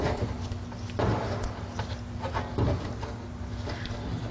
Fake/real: real